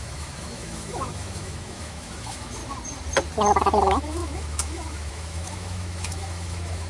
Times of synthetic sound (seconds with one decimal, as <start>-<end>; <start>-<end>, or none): 0.0-2.6; 3.8-6.9